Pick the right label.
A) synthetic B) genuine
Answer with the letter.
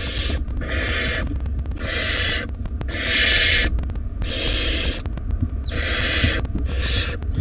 B